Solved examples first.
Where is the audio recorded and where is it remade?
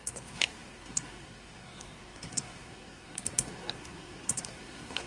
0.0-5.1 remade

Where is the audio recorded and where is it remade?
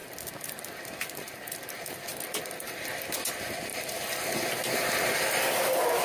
0.0-2.4 recorded; 2.4-3.7 remade; 3.7-5.4 recorded; 5.4-6.0 remade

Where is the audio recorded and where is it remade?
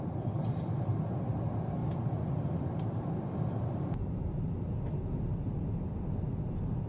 0.0-6.9 recorded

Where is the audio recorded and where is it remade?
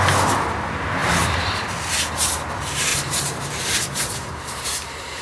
0.0-2.9 recorded; 2.9-5.2 remade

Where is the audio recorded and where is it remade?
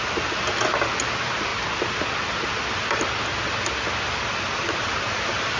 0.0-5.6 recorded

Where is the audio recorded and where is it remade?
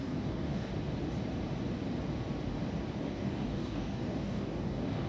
0.0-0.7 remade; 0.7-3.0 recorded; 3.0-5.1 remade